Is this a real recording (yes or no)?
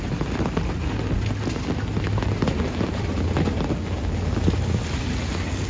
yes